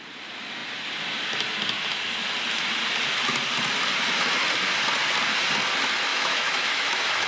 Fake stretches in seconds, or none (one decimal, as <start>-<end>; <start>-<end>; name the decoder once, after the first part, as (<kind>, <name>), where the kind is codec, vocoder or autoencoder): 6.1-7.3 (autoencoder, DAC-VAE)